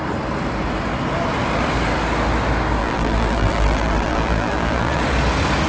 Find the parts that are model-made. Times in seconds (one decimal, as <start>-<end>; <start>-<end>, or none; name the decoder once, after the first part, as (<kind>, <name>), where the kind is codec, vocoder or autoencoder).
2.8-5.0 (vocoder, BigVGAN v2)